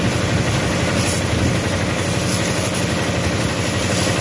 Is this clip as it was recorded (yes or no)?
yes